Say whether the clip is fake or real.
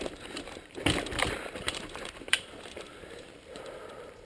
fake